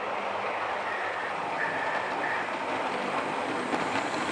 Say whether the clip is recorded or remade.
recorded